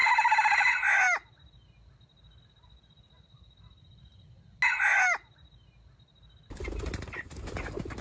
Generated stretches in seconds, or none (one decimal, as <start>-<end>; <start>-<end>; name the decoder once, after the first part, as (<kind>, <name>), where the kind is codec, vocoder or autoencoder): none